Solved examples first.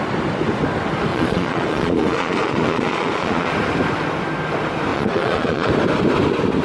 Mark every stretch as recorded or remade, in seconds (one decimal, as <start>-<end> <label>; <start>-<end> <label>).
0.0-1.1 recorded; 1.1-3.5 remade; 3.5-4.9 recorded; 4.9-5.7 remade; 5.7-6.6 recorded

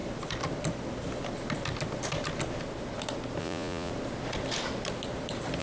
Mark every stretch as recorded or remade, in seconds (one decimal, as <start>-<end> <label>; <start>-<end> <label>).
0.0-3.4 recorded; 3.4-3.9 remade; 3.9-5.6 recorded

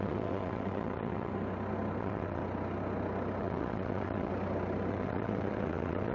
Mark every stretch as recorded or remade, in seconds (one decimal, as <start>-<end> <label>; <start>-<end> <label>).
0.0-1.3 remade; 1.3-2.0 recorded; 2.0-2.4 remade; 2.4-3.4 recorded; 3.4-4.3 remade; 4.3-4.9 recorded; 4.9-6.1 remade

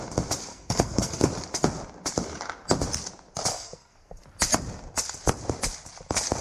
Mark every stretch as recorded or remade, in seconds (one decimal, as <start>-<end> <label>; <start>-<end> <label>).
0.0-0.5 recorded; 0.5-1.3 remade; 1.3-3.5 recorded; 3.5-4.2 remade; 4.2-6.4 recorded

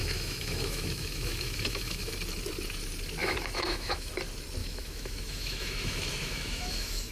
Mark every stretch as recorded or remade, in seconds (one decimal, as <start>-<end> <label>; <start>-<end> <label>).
0.0-2.1 remade; 2.1-3.2 recorded; 3.2-4.1 remade; 4.1-4.6 recorded; 4.6-7.1 remade